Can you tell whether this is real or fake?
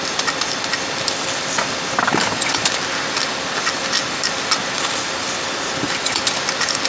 real